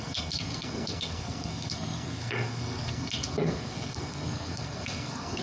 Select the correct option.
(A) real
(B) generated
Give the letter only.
B